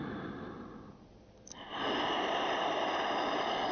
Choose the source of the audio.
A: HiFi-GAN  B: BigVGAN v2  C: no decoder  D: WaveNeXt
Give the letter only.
C